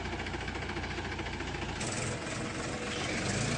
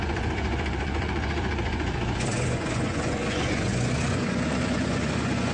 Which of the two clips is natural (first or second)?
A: first